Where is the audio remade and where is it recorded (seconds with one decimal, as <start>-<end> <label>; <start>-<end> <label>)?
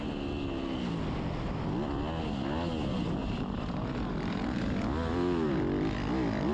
0.0-3.2 recorded; 3.2-4.6 remade; 4.6-6.5 recorded